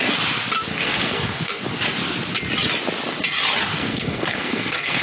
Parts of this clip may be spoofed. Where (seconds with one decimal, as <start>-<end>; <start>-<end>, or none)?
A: 0.7-1.6; 3.7-5.0